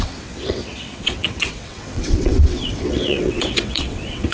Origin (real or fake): fake